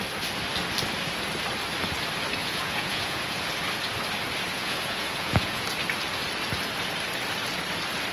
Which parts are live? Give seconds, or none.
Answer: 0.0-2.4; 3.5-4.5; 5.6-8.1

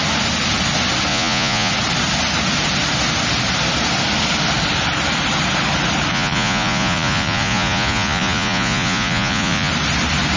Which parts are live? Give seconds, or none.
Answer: 0.0-1.1; 1.7-6.1; 9.7-10.4